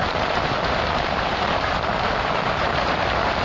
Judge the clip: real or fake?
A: fake